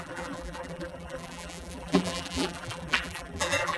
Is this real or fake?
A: fake